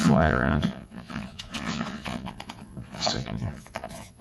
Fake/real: fake